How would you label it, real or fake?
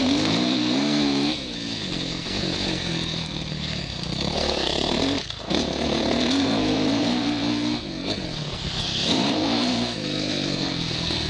fake